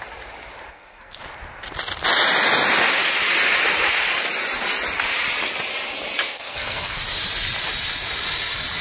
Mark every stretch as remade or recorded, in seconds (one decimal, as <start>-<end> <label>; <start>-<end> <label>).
0.0-0.7 recorded; 0.7-1.2 remade; 1.2-6.3 recorded; 6.3-7.0 remade; 7.0-8.8 recorded